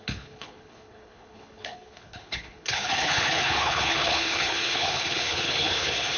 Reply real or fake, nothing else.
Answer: fake